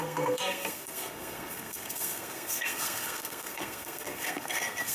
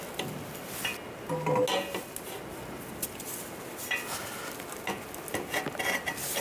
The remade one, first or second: first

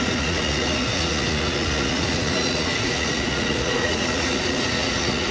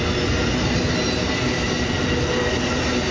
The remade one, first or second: first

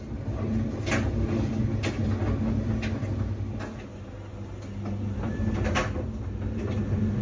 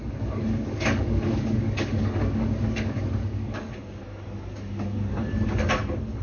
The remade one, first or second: second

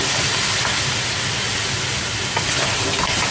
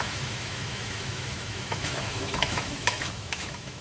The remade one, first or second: second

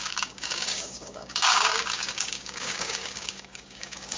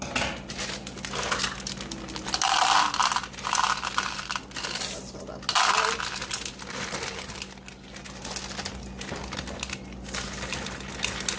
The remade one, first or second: first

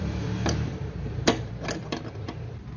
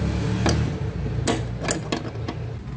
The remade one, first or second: first